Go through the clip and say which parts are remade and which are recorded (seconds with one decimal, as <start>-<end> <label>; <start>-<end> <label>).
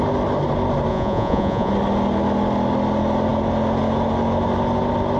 0.0-0.9 recorded; 0.9-1.7 remade; 1.7-5.2 recorded